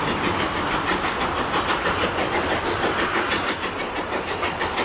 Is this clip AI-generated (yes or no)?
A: no